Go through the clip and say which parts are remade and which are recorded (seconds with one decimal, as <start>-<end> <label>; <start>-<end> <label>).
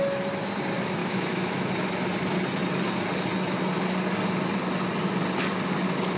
0.0-1.0 recorded; 1.0-1.7 remade; 1.7-6.2 recorded